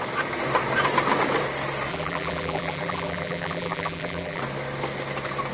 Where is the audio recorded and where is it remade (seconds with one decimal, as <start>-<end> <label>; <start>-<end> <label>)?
0.0-1.9 recorded; 1.9-4.4 remade; 4.4-5.5 recorded